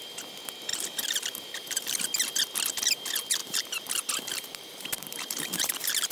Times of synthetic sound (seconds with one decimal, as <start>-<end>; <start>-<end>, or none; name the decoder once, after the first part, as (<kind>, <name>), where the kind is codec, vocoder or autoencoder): 0.7-2.0 (vocoder, BigVGAN v2); 3.4-6.1